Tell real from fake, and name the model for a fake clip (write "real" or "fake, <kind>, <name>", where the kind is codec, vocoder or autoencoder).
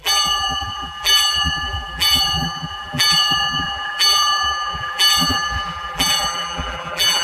fake, vocoder, BigVGAN v2